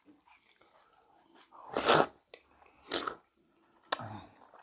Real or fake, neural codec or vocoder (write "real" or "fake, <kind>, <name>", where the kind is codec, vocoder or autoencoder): real